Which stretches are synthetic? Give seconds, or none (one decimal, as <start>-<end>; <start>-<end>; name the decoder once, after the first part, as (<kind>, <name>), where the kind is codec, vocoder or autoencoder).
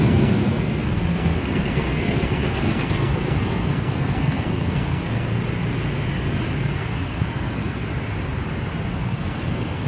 0.0-5.4 (codec, SNAC); 6.6-7.8; 8.9-9.9